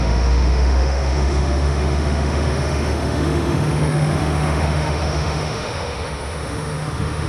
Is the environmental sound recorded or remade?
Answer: remade